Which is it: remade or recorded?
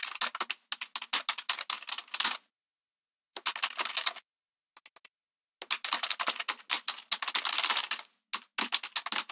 recorded